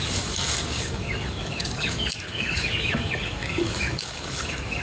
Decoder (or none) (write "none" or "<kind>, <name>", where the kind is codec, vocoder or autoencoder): codec, DAC